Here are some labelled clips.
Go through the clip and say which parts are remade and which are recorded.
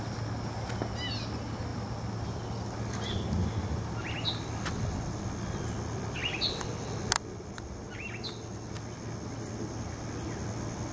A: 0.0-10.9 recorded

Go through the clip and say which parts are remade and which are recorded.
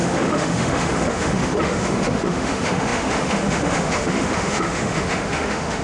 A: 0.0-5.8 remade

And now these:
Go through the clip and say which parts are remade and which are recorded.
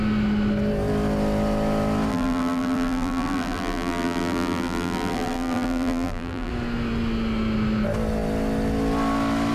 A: 0.0-2.1 recorded; 2.1-6.5 remade; 6.5-9.5 recorded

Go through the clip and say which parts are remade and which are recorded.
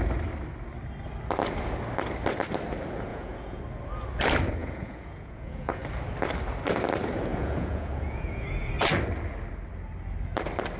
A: 0.0-3.1 recorded; 3.1-3.6 remade; 3.6-4.6 recorded; 4.6-5.8 remade; 5.8-7.3 recorded; 7.3-8.7 remade; 8.7-10.8 recorded